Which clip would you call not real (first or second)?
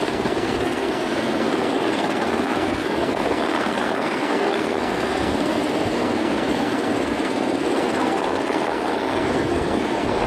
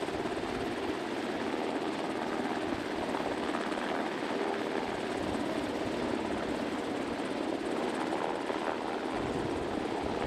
first